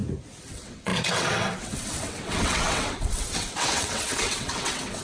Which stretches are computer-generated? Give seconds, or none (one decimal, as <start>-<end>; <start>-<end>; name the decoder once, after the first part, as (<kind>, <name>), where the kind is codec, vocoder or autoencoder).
0.5-5.0 (vocoder, WaveNeXt)

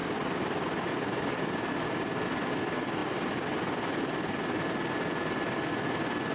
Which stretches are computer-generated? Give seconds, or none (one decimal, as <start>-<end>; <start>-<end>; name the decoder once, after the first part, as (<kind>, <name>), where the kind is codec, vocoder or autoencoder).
none

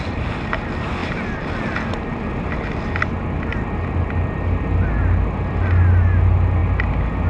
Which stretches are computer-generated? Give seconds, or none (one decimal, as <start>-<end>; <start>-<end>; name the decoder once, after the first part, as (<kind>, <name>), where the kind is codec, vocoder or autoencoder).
none

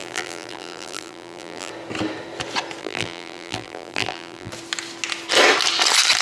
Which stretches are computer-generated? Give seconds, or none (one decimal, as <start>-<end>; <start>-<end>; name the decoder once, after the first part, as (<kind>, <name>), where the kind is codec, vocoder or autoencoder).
0.0-1.7 (vocoder, BigVGAN v2); 2.8-4.5